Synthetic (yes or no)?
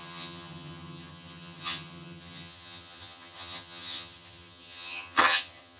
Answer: yes